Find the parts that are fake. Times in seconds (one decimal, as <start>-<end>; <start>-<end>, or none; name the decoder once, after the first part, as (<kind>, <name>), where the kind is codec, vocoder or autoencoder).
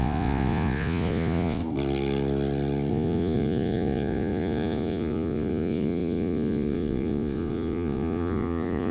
0.0-1.6 (vocoder, Vocos); 2.9-8.9